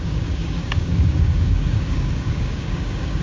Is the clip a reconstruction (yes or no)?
yes